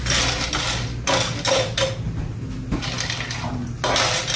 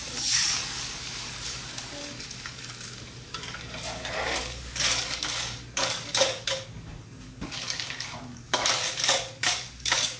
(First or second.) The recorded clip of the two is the first